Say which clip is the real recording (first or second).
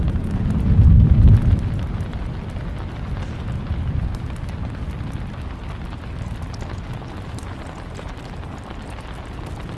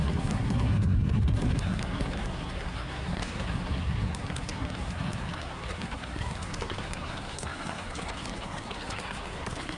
first